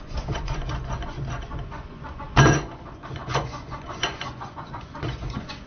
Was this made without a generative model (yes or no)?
no